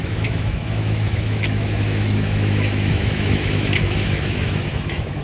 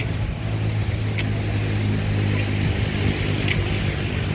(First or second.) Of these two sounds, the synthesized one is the first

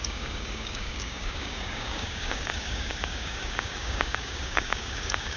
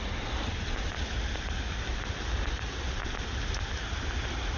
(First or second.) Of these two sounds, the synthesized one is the first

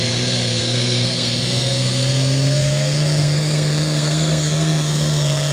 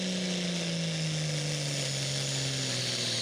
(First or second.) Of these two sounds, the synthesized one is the first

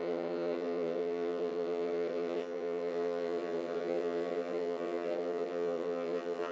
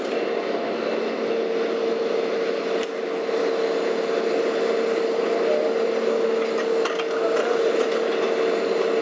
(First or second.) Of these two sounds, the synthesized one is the first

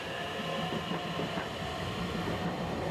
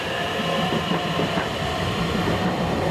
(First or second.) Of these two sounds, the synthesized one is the second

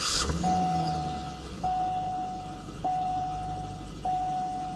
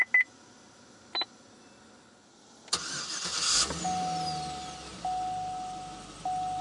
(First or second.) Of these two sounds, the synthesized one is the first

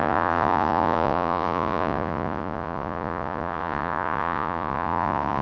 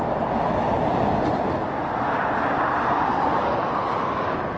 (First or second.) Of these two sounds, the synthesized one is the first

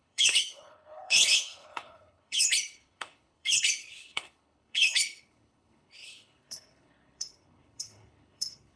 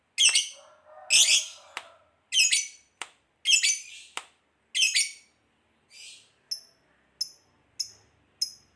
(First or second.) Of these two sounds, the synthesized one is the first